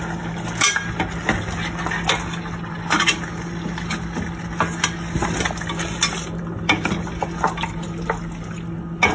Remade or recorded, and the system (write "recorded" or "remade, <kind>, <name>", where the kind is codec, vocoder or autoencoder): recorded